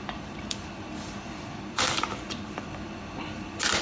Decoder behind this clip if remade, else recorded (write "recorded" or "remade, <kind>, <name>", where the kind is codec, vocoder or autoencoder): remade, vocoder, BigVGAN v2